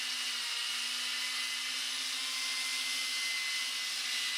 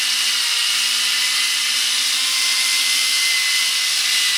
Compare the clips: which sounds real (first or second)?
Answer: first